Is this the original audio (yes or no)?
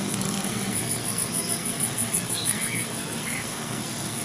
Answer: no